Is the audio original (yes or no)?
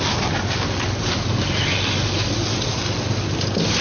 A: yes